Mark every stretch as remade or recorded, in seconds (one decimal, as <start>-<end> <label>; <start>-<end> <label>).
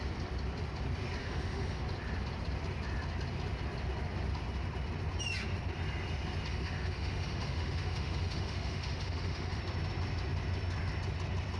0.0-1.2 recorded; 1.2-1.8 remade; 1.8-6.5 recorded; 6.5-9.6 remade; 9.6-11.6 recorded